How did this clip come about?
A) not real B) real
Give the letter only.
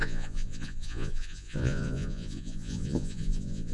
A